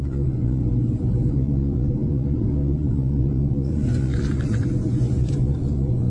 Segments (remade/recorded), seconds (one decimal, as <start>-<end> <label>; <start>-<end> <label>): 0.0-0.6 remade; 0.6-1.3 recorded; 1.3-6.1 remade